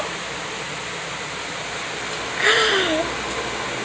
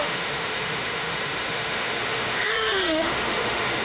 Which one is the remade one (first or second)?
second